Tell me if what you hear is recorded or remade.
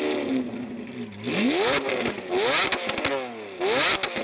recorded